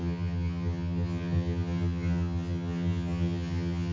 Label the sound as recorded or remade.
remade